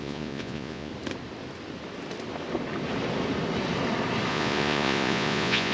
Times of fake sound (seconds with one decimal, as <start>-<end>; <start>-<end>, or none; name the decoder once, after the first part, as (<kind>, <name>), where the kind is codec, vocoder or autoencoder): 0.0-0.9 (vocoder, Vocos); 4.3-5.7